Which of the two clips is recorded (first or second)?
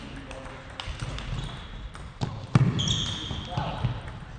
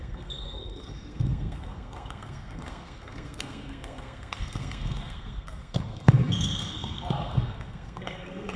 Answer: first